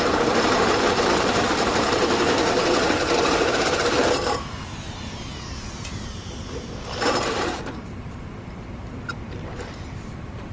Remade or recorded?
remade